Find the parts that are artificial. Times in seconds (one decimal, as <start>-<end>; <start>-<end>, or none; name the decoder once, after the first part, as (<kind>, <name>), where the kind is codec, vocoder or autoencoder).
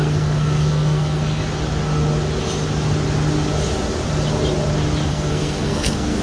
0.0-1.4 (codec, SNAC); 5.1-6.2